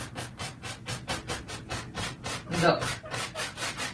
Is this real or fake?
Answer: real